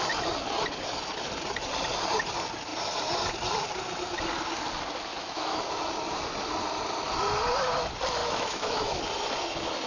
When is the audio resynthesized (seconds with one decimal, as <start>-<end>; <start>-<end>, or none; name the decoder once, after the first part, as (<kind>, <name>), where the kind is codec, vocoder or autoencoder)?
5.1-5.6 (autoencoder, DAC-VAE); 8.2-9.0